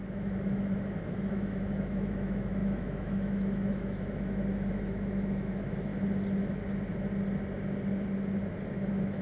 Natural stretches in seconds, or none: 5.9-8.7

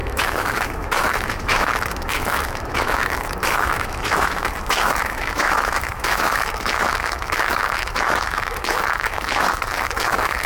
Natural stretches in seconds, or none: none

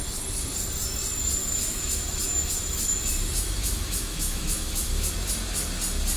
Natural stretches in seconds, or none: 0.0-1.4; 5.1-6.2

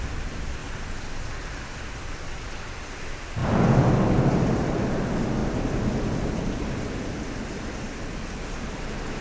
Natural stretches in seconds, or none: 0.0-9.2